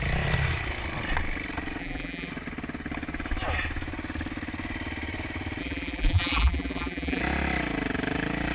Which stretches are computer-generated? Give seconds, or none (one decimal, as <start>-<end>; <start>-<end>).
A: 1.8-2.3; 5.6-7.2